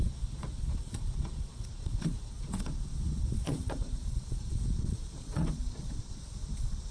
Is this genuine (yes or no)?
no